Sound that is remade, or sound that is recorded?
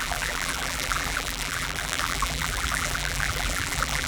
remade